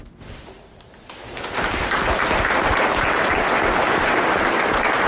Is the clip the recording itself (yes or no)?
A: yes